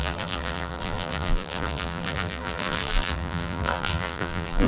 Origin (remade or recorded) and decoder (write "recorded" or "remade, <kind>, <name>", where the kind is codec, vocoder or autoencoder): remade, vocoder, BigVGAN v2